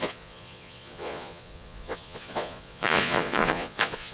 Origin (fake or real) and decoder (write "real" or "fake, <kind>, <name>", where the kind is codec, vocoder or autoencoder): fake, vocoder, Vocos